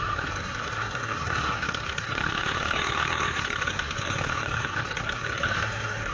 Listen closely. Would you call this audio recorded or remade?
remade